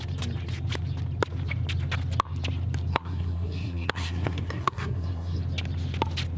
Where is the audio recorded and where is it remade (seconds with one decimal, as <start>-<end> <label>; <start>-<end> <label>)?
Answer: 0.0-2.9 recorded; 2.9-5.4 remade; 5.4-6.4 recorded